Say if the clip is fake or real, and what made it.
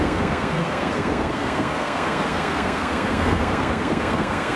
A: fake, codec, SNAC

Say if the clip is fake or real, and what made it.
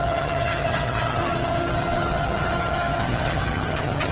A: fake, vocoder, HiFi-GAN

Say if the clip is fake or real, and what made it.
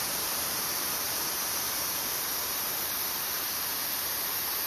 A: fake, vocoder, BigVGAN v2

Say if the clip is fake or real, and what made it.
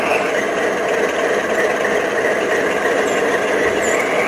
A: real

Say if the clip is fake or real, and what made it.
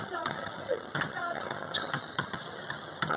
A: fake, vocoder, HiFi-GAN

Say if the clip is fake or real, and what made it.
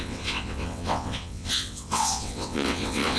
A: fake, vocoder, WaveNeXt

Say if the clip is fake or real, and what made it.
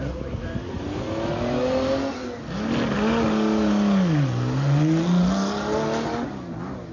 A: real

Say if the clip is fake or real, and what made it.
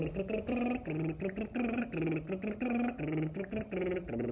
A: real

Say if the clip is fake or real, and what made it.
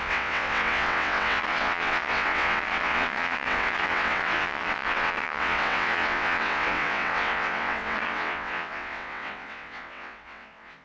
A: fake, vocoder, WaveNeXt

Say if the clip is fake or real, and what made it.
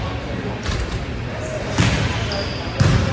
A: real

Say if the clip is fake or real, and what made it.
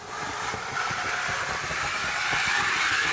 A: real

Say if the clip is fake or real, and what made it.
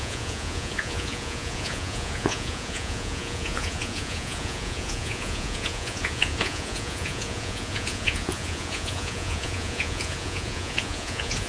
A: fake, vocoder, Vocos